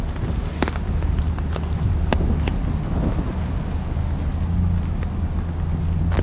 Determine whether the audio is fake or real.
real